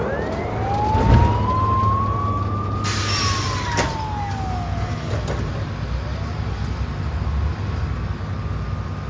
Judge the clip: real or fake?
real